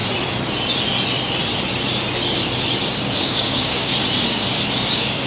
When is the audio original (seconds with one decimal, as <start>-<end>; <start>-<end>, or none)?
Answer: 0.0-3.2; 3.9-4.7

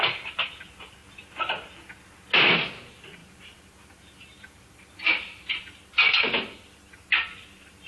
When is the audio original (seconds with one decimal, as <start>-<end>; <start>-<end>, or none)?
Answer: 0.0-3.2; 5.5-7.9

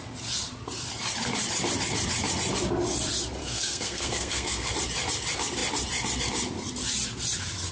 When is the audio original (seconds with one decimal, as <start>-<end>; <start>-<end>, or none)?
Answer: 0.0-3.4; 4.7-7.7

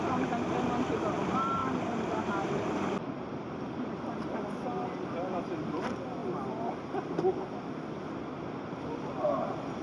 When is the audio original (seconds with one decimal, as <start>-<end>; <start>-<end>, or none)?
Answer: 0.0-9.8

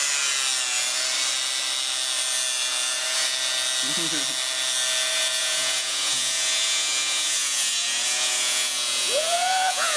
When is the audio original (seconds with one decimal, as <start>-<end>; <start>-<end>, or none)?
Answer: 0.0-5.4

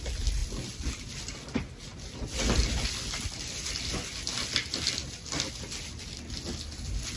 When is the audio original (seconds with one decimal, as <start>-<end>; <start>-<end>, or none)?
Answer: 0.0-7.2

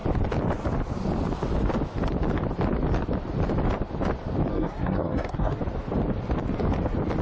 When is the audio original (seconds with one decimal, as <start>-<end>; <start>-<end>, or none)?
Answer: 0.0-4.5; 5.6-7.2